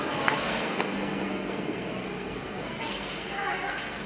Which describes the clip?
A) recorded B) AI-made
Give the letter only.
B